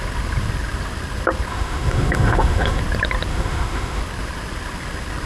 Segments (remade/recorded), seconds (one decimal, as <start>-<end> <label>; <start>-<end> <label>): 0.0-1.5 recorded; 1.5-2.8 remade; 2.8-3.3 recorded; 3.3-4.0 remade; 4.0-5.2 recorded